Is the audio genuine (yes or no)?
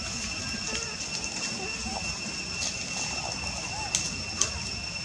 yes